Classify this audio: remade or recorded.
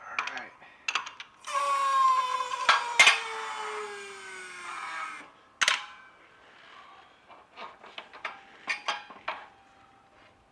recorded